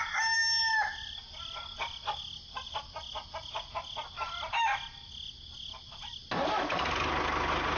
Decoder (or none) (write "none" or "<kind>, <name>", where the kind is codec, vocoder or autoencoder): none